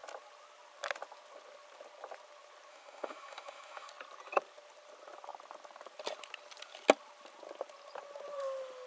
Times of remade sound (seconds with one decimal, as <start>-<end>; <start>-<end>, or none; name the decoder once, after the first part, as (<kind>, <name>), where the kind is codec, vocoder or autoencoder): 2.7-3.9 (autoencoder, DAC-VAE)